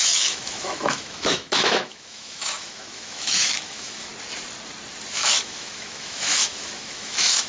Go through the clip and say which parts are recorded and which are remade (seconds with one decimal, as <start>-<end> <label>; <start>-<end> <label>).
0.0-4.1 remade; 4.1-5.1 recorded; 5.1-7.5 remade